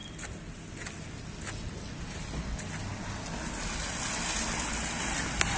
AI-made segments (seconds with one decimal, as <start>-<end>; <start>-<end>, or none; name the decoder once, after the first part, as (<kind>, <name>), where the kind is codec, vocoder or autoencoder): none